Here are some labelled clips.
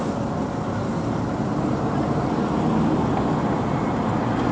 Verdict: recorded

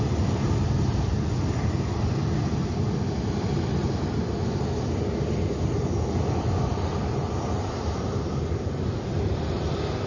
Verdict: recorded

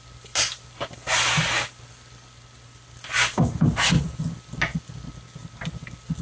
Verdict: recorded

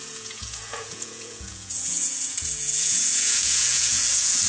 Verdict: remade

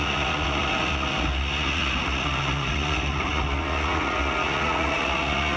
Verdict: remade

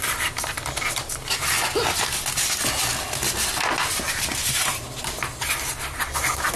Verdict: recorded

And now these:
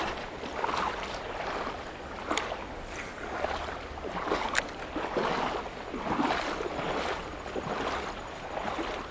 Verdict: recorded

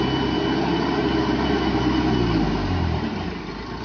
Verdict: recorded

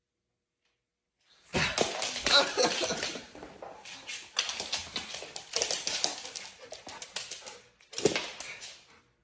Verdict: recorded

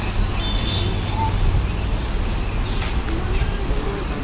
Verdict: recorded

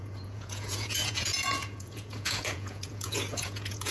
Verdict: remade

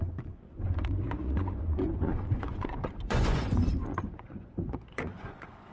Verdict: remade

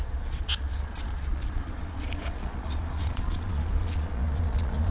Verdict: remade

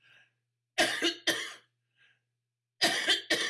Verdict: recorded